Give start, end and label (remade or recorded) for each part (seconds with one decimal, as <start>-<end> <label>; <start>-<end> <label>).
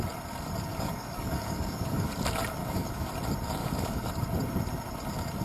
0.0-0.7 recorded; 0.7-2.1 remade; 2.1-2.6 recorded; 2.6-3.1 remade; 3.1-3.6 recorded; 3.6-4.1 remade; 4.1-5.4 recorded